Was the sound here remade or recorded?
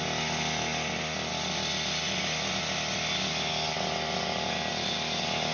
recorded